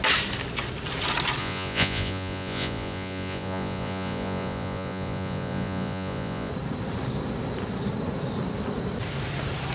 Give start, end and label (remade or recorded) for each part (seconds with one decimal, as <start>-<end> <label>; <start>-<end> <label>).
0.0-1.4 recorded; 1.4-6.5 remade; 6.5-9.7 recorded